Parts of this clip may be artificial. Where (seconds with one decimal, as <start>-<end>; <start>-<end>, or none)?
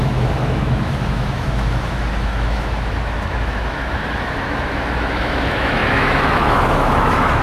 0.0-7.4